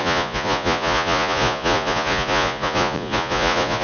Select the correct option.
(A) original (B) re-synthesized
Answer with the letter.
B